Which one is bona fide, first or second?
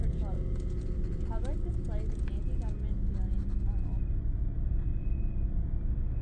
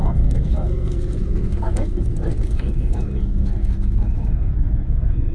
first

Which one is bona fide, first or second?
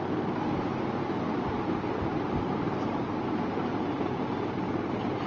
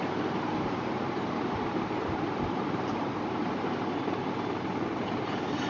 first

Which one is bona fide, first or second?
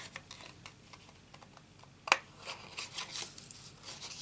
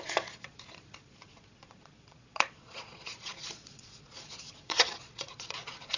first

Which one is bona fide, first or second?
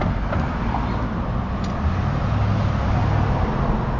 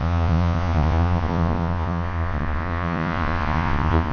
first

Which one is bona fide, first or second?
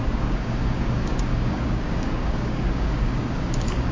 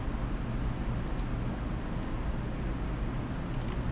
second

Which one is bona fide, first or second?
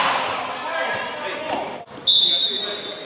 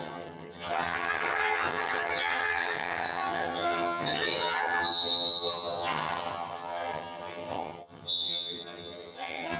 first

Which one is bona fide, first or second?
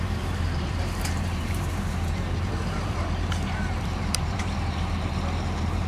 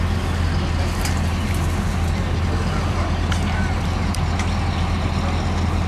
second